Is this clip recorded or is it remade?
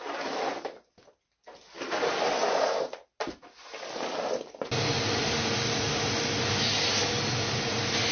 recorded